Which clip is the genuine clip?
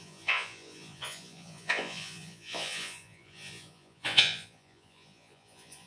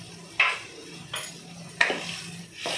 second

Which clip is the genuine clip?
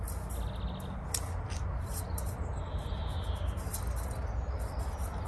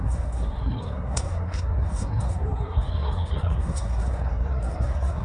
first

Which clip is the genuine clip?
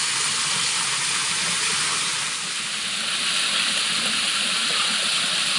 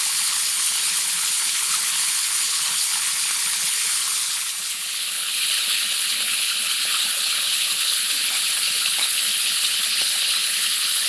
first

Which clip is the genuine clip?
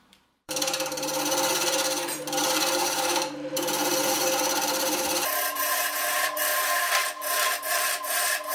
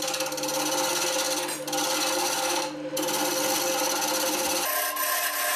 second